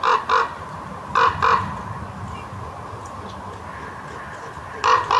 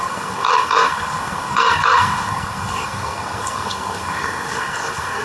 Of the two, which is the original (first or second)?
first